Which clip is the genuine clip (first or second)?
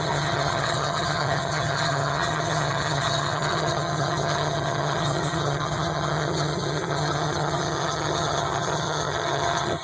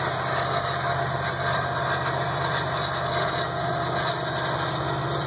second